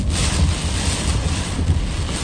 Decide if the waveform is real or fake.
real